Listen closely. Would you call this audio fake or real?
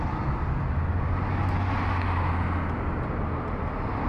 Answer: real